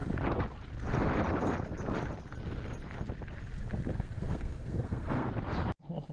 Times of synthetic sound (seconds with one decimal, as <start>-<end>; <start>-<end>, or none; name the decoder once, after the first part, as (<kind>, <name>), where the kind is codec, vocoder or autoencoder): 3.9-5.3 (codec, SNAC)